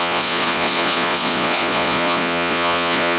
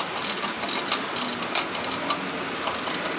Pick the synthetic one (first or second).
first